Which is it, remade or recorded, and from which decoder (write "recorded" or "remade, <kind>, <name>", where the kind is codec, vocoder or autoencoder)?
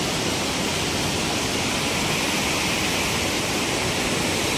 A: remade, vocoder, BigVGAN v2